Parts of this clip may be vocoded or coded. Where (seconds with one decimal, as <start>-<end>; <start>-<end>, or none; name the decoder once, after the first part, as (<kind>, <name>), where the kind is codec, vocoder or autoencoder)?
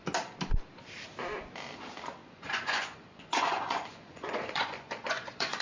2.2-5.6 (vocoder, Vocos)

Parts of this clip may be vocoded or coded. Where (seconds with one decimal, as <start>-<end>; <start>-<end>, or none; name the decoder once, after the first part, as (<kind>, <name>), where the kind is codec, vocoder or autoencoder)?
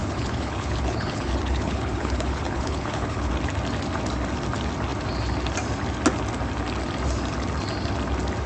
0.0-3.3 (codec, HILCodec)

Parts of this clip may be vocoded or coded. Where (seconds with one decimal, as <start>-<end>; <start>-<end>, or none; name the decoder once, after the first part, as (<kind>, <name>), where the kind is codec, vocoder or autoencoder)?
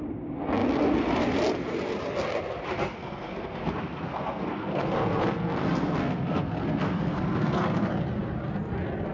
2.7-7.9 (codec, SNAC)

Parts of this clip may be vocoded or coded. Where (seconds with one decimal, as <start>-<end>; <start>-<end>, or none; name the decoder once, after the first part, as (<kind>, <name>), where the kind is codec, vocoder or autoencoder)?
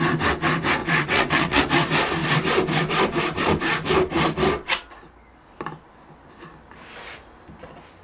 0.8-1.6 (vocoder, WaveNeXt)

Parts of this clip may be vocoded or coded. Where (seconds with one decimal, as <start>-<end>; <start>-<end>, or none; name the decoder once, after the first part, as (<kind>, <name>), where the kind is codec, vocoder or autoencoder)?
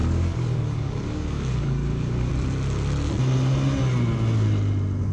0.0-2.3 (codec, DAC)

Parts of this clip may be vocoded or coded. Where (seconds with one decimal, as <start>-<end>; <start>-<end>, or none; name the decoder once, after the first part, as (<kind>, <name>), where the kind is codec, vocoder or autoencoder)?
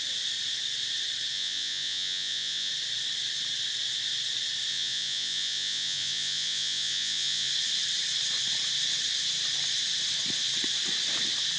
1.3-2.7 (vocoder, Vocos); 4.7-7.5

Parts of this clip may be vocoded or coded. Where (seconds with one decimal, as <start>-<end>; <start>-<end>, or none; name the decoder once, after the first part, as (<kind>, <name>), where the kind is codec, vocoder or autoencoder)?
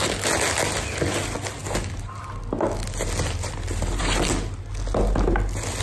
none